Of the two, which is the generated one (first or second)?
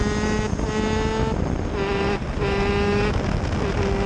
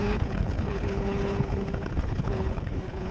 second